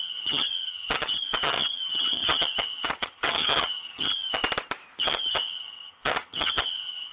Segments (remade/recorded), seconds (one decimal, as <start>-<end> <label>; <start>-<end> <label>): 0.0-4.4 remade; 4.4-5.0 recorded; 5.0-7.1 remade